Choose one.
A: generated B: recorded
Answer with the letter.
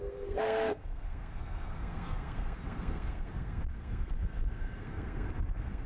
A